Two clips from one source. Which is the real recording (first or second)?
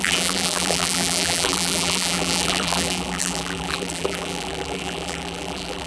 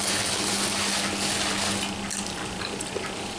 second